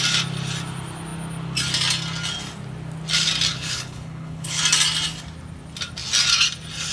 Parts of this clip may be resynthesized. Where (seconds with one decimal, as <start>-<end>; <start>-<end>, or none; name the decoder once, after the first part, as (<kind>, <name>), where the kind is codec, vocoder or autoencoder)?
3.5-4.6 (codec, HILCodec)